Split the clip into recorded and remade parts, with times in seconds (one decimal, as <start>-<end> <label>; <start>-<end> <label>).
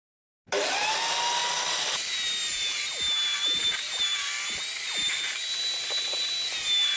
0.0-7.0 recorded